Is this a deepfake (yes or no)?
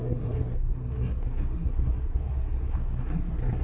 yes